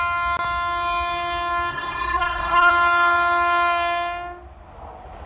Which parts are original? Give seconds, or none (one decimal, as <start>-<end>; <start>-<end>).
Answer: 0.0-1.7; 2.7-5.3